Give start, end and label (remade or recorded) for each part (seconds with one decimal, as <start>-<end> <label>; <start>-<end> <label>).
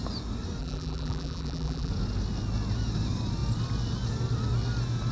0.0-0.6 recorded; 0.6-1.9 remade; 1.9-5.1 recorded